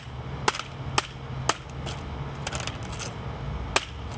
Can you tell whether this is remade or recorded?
recorded